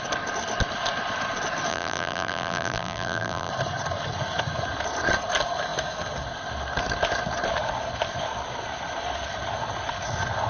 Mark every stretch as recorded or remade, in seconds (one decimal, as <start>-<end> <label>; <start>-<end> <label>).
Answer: 0.0-1.7 recorded; 1.7-3.5 remade; 3.5-10.5 recorded